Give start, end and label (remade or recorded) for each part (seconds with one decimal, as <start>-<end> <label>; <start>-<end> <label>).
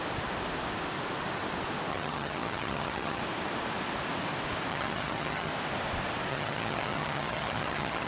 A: 0.0-1.9 recorded; 1.9-3.2 remade; 3.2-4.7 recorded; 4.7-5.5 remade; 5.5-6.3 recorded; 6.3-8.1 remade